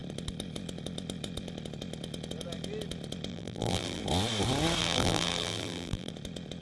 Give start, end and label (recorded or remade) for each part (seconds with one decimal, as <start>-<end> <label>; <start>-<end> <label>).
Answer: 0.0-3.3 recorded; 3.3-4.0 remade; 4.0-4.8 recorded; 4.8-6.1 remade; 6.1-6.6 recorded